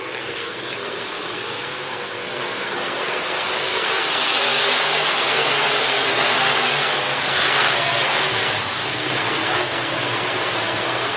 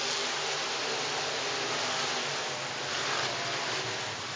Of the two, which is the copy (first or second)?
first